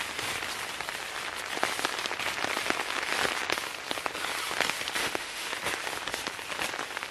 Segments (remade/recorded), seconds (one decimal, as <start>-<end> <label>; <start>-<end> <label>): 0.0-5.0 recorded; 5.0-5.5 remade; 5.5-7.1 recorded

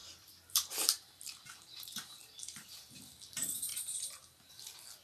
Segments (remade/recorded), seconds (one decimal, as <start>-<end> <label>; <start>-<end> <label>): 0.0-3.0 remade; 3.0-3.7 recorded; 3.7-4.5 remade; 4.5-5.0 recorded

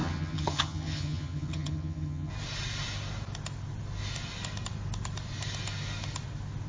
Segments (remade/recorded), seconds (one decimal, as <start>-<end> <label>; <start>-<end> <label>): 0.0-2.3 remade; 2.3-6.7 recorded

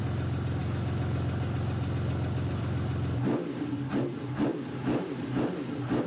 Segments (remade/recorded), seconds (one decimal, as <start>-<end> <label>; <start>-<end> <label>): 0.0-6.1 recorded

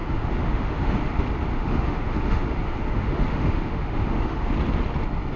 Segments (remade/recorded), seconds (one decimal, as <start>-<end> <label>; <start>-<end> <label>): 0.0-1.0 remade; 1.0-1.5 recorded; 1.5-4.5 remade; 4.5-5.4 recorded